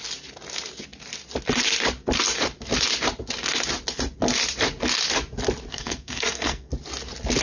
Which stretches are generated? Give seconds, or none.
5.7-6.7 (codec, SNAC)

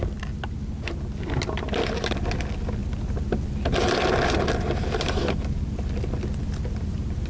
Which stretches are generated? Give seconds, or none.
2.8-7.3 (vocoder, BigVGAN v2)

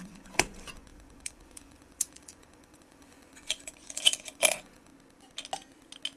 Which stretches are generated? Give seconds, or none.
0.0-4.9 (vocoder, Vocos)

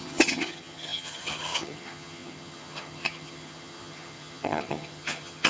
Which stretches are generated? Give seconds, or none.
0.0-5.5 (vocoder, HiFi-GAN)

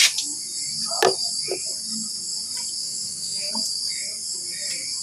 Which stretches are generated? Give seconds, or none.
2.8-3.5 (autoencoder, DAC-VAE)

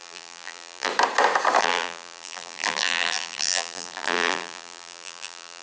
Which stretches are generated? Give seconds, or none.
0.0-0.9 (vocoder, BigVGAN v2); 1.6-5.6

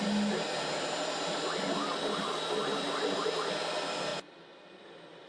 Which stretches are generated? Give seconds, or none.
none

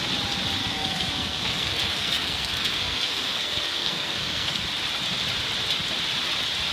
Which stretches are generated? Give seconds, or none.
0.6-4.6 (codec, SNAC)